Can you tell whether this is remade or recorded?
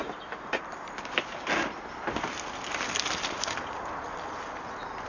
recorded